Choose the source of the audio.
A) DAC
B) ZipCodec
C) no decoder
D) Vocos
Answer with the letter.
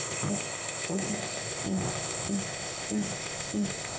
B